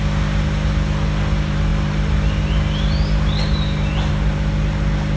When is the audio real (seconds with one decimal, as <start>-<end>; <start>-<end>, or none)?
0.0-5.2